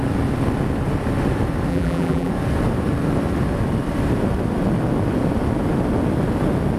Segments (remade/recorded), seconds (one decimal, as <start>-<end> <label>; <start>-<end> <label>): 0.0-1.7 recorded; 1.7-2.3 remade; 2.3-6.8 recorded